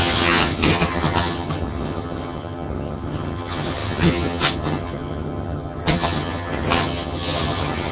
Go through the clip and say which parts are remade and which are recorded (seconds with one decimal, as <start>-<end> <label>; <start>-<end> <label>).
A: 0.0-7.9 remade